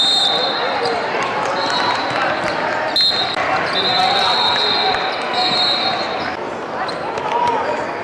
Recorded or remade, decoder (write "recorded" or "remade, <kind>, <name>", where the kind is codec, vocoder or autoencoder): recorded